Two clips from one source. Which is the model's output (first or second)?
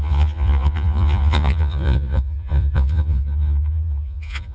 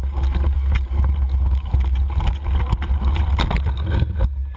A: first